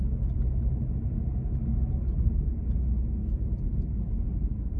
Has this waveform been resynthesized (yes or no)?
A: no